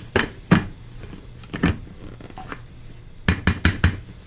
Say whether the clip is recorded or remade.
recorded